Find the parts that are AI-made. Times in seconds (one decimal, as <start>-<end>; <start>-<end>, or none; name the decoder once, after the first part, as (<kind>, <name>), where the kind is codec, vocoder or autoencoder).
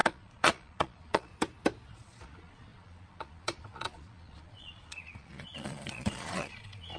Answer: 0.0-1.3 (vocoder, Vocos); 1.9-7.0